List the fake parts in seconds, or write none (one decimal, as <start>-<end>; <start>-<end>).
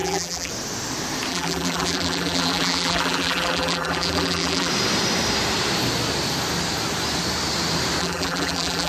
0.0-0.5; 1.3-4.7; 8.0-8.9